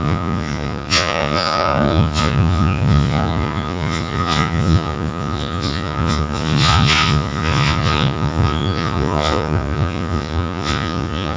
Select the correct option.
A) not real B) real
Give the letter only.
A